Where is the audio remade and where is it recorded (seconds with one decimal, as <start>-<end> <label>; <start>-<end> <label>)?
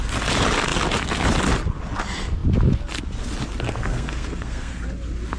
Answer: 0.0-3.9 recorded; 3.9-4.7 remade; 4.7-5.4 recorded